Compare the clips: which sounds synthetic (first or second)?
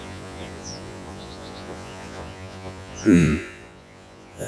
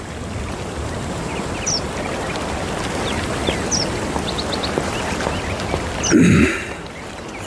first